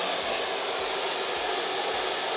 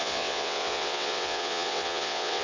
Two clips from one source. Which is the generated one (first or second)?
second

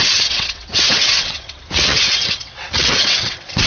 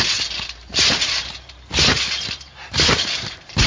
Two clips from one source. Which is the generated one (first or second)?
first